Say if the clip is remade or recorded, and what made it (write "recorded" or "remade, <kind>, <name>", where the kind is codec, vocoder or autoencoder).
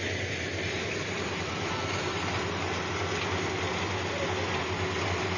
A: recorded